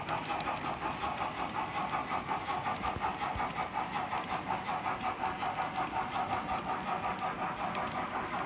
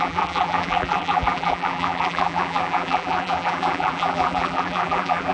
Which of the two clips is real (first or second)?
first